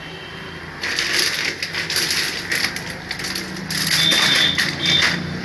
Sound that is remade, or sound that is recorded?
recorded